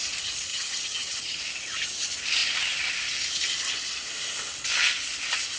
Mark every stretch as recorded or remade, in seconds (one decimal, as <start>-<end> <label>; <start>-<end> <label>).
0.0-0.5 recorded; 0.5-1.4 remade; 1.4-5.6 recorded